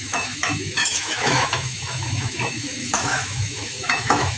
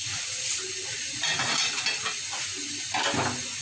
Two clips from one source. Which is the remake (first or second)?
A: first